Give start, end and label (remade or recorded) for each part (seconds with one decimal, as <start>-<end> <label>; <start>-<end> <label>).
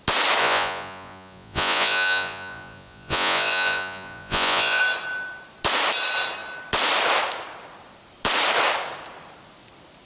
0.0-0.4 recorded; 0.4-4.8 remade; 4.8-10.1 recorded